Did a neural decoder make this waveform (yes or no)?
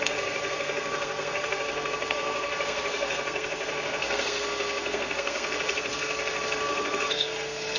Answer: yes